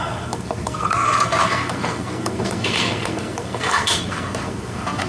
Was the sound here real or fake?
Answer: fake